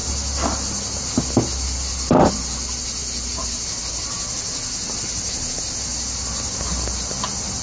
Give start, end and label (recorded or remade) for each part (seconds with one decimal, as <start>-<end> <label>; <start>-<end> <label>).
0.0-7.6 recorded